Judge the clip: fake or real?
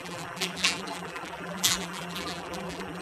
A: fake